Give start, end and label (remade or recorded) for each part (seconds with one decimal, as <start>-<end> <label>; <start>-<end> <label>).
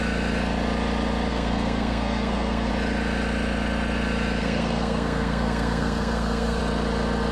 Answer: 0.0-1.3 recorded; 1.3-2.7 remade; 2.7-4.4 recorded; 4.4-6.6 remade; 6.6-7.3 recorded